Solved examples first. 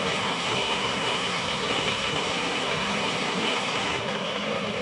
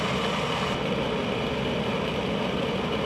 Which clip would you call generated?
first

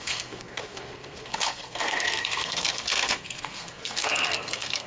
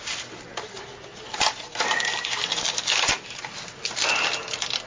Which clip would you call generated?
first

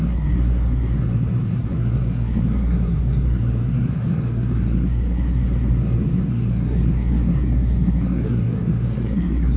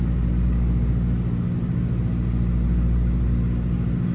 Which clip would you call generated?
first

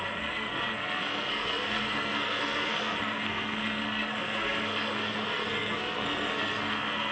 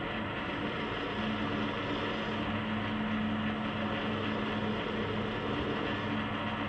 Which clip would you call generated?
first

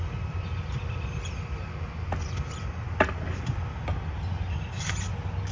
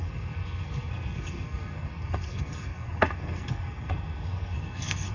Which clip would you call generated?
second